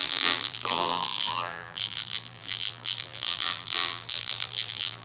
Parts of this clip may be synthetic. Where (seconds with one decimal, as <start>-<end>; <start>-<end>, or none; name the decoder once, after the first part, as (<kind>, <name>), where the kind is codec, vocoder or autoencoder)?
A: 0.0-5.0 (vocoder, BigVGAN v2)